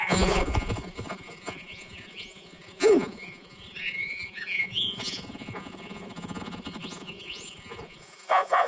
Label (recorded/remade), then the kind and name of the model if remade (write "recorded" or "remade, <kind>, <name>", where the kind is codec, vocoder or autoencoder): remade, vocoder, Vocos